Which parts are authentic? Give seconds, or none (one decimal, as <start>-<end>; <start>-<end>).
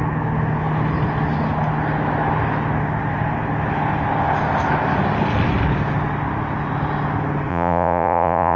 0.0-7.5